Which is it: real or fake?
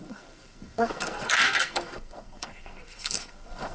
fake